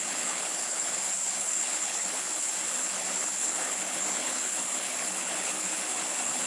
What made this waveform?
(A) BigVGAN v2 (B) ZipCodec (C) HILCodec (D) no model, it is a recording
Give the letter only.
C